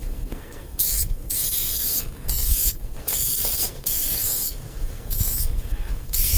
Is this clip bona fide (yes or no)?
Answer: no